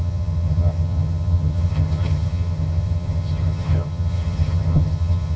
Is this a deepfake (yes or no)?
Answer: yes